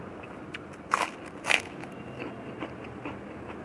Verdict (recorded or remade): recorded